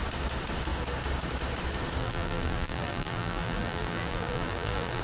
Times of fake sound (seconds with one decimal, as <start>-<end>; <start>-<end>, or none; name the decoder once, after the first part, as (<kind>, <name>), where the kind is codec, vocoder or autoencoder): 2.0-5.0 (vocoder, BigVGAN v2)